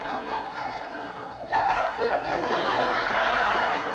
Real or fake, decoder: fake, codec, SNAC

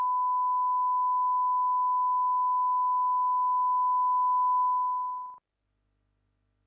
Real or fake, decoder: real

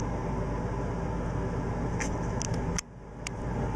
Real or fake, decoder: real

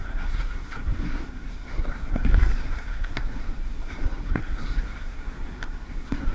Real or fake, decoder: fake, codec, SNAC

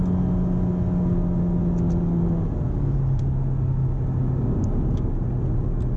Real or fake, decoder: real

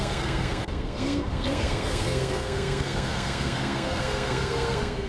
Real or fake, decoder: fake, codec, SNAC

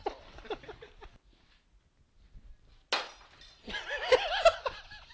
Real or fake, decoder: real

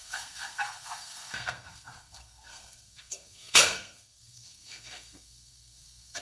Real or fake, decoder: fake, codec, SNAC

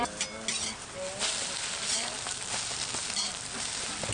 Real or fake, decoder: real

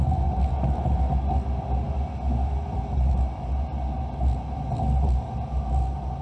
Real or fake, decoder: real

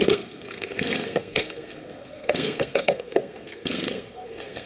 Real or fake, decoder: fake, codec, SNAC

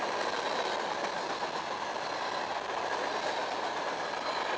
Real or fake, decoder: real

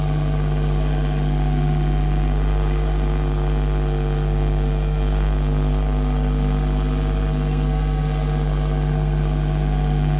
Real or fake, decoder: fake, codec, SNAC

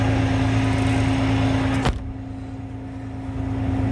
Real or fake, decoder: real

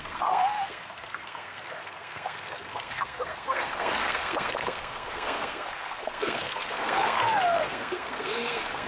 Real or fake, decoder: fake, codec, SNAC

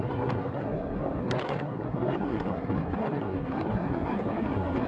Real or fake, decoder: fake, codec, SNAC